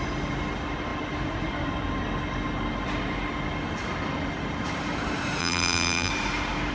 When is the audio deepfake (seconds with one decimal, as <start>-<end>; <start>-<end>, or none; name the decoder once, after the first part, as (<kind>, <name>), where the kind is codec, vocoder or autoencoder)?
5.4-6.1 (vocoder, BigVGAN v2)